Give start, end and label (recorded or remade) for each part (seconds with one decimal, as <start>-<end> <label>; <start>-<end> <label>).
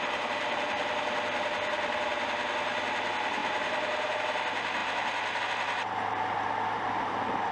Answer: 0.0-3.4 recorded; 3.4-4.2 remade; 4.2-7.5 recorded